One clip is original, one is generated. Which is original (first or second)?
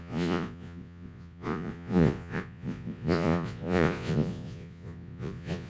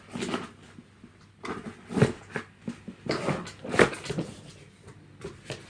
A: second